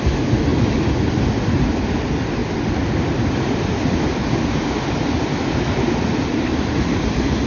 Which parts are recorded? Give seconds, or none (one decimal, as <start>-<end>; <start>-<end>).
0.0-2.4; 4.2-7.5